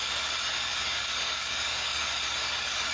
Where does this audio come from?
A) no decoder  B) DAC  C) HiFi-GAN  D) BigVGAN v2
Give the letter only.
B